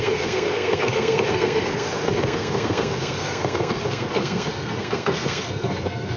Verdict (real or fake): fake